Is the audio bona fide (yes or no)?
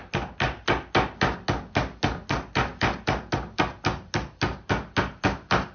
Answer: yes